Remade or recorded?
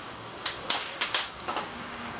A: remade